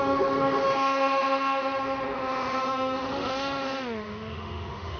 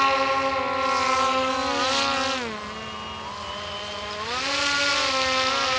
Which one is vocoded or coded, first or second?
first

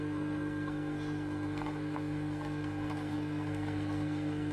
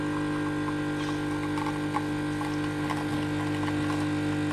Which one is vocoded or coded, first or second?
first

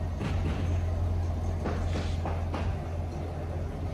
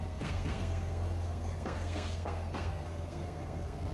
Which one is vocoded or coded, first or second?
second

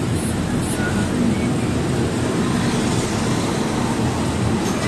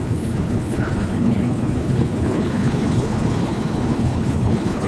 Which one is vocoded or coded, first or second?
second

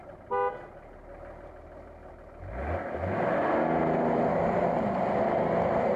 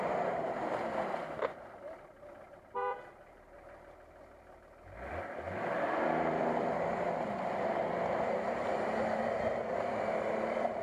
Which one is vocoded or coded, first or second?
second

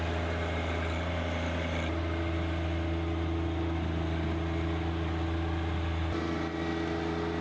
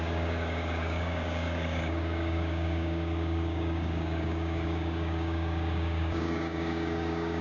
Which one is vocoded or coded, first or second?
second